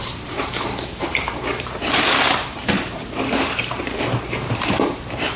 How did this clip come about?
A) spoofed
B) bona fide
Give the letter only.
A